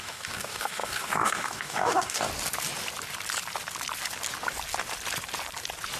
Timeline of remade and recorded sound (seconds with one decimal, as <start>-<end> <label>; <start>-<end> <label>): 0.0-2.3 remade; 2.3-6.0 recorded